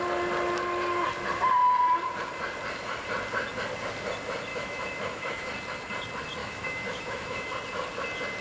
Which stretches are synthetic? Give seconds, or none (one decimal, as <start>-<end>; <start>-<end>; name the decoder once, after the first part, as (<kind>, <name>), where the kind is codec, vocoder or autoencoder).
4.5-5.5 (autoencoder, DAC-VAE); 6.4-7.5

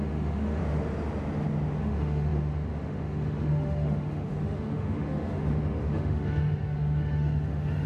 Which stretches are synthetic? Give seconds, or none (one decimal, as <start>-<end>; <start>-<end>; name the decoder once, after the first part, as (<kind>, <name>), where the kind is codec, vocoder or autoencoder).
0.0-0.6 (autoencoder, DAC-VAE); 1.8-7.9

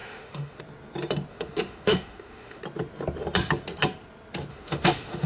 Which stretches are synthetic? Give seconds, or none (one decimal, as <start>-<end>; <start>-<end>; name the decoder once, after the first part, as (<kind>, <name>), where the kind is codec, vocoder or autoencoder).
0.0-0.6 (autoencoder, DAC-VAE); 1.3-2.6; 4.5-5.3

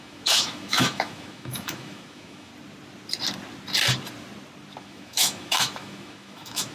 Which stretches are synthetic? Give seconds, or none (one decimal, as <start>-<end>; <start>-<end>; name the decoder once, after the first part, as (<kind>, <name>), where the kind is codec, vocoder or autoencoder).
0.0-2.5 (autoencoder, DAC-VAE); 4.8-6.7

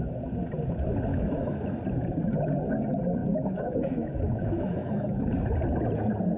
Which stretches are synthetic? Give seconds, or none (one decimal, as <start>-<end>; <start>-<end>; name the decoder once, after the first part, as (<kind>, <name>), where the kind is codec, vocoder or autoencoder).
1.1-1.6 (autoencoder, DAC-VAE); 3.2-5.2